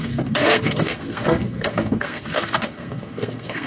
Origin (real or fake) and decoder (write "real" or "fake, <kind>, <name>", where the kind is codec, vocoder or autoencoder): fake, codec, SNAC